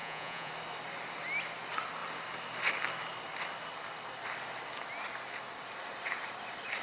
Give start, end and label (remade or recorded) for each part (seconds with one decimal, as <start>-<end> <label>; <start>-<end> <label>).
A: 0.0-0.5 remade; 0.5-6.8 recorded